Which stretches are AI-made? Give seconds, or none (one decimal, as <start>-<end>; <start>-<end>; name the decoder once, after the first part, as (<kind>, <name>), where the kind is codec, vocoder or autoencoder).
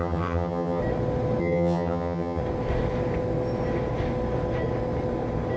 0.0-0.8 (vocoder, HiFi-GAN); 1.4-2.4